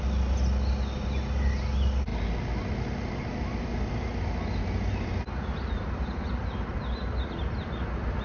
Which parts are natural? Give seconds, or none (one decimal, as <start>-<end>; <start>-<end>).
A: 0.0-8.2